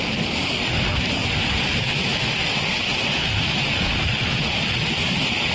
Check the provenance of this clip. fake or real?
real